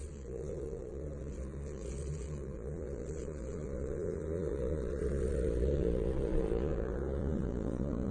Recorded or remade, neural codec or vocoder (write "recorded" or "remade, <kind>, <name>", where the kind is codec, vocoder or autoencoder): remade, vocoder, Vocos